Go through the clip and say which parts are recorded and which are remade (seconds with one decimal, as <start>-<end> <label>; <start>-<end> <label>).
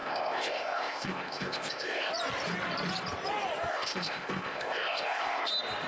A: 0.0-2.1 remade; 2.1-3.7 recorded; 3.7-5.5 remade; 5.5-5.9 recorded